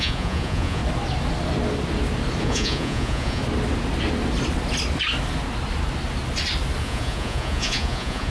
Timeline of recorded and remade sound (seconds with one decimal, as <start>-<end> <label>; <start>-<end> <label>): 0.0-0.8 remade; 0.8-2.4 recorded; 2.4-3.4 remade; 3.4-6.8 recorded; 6.8-8.3 remade